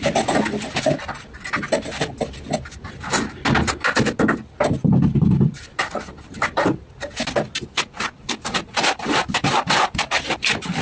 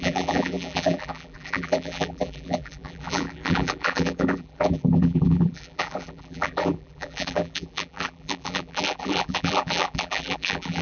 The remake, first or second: second